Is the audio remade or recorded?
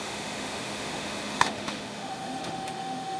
remade